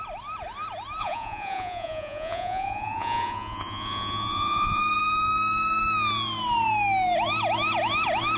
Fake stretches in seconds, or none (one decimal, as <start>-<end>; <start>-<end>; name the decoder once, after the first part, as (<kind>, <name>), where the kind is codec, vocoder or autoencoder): 1.0-4.8 (vocoder, Vocos)